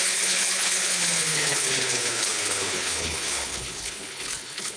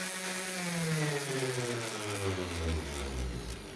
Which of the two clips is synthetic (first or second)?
first